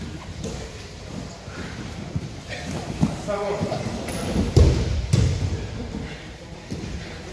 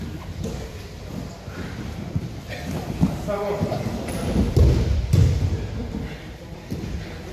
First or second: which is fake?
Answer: first